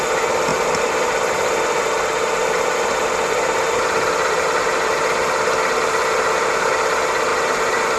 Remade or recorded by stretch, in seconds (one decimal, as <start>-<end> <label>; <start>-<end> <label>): 0.0-0.5 recorded; 0.5-1.8 remade; 1.8-2.4 recorded; 2.4-5.1 remade; 5.1-7.3 recorded; 7.3-8.0 remade